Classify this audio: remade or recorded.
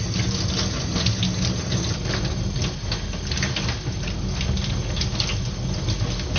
recorded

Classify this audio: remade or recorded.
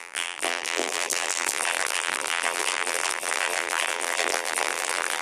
remade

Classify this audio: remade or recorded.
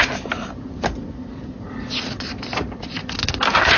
recorded